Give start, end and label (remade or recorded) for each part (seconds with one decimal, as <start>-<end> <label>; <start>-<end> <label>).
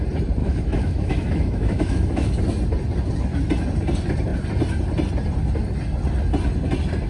0.0-0.4 recorded; 0.4-2.4 remade; 2.4-7.1 recorded